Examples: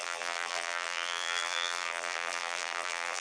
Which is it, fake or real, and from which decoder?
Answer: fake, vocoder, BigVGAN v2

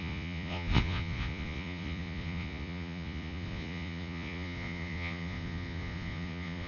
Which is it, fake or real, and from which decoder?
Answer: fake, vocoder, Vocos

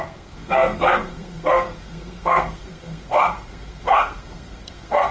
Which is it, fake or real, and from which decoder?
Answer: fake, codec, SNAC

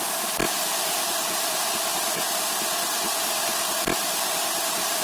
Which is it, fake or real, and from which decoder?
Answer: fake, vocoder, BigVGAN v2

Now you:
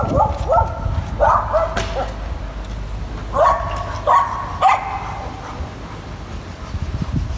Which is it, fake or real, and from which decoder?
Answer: real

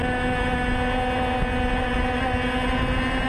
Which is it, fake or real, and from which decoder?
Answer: real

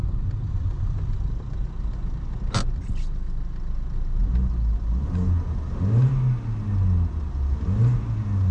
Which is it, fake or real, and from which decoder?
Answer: real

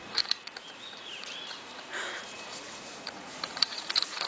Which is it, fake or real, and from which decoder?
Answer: fake, vocoder, Vocos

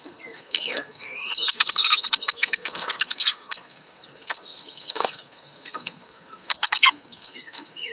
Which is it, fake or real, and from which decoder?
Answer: fake, codec, SNAC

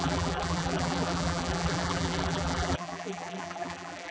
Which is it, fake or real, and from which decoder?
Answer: fake, vocoder, BigVGAN v2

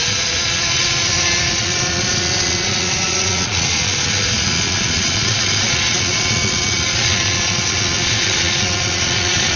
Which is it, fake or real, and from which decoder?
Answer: fake, vocoder, Vocos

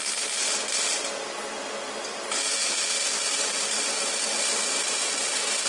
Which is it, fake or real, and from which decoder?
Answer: real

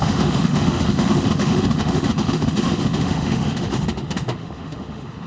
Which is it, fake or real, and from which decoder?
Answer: fake, autoencoder, DAC-VAE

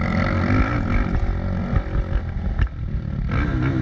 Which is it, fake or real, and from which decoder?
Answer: real